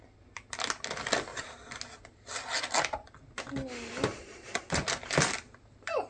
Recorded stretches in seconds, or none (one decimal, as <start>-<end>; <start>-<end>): 0.0-4.1; 4.7-6.1